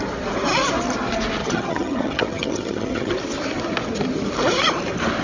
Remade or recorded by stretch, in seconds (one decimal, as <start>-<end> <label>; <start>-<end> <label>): 0.0-1.4 recorded; 1.4-3.1 remade; 3.1-5.2 recorded